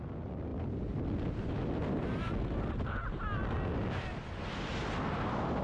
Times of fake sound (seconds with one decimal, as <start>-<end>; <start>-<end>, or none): none